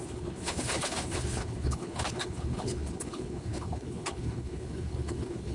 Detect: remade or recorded remade